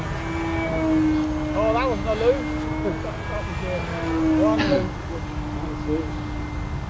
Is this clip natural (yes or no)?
yes